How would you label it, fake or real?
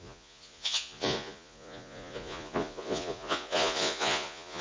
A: fake